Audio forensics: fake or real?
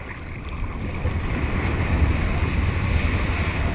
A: real